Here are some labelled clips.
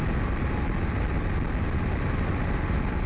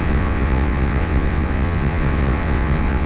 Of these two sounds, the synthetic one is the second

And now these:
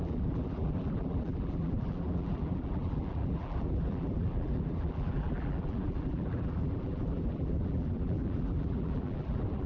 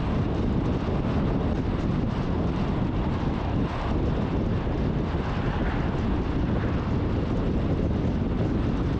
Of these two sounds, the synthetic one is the first